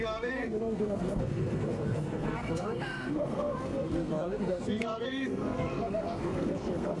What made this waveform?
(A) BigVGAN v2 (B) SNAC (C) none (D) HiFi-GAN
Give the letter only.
B